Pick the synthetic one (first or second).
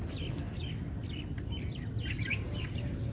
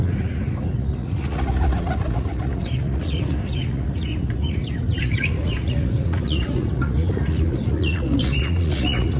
second